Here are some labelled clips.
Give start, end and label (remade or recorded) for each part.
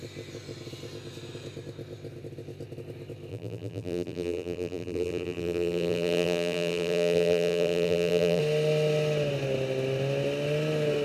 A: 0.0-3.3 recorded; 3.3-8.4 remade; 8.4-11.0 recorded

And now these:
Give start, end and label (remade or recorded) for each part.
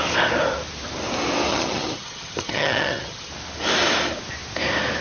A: 0.0-1.5 recorded; 1.5-3.3 remade; 3.3-5.0 recorded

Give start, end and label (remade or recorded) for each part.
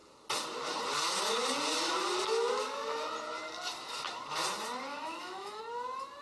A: 0.0-4.9 recorded; 4.9-5.6 remade; 5.6-6.2 recorded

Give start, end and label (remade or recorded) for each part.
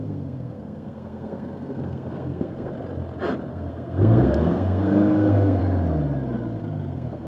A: 0.0-2.7 remade; 2.7-3.5 recorded; 3.5-5.6 remade; 5.6-6.6 recorded; 6.6-7.3 remade